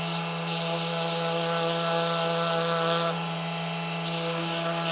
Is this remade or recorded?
recorded